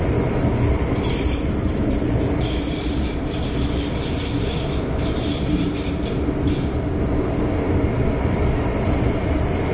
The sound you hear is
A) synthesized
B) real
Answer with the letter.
B